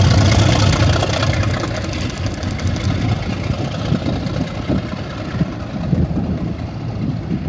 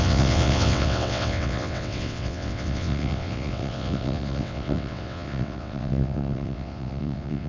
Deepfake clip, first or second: second